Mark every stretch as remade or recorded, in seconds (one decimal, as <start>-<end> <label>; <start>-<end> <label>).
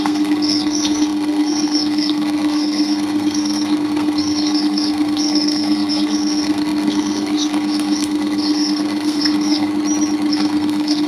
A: 0.0-9.7 remade; 9.7-10.3 recorded; 10.3-11.1 remade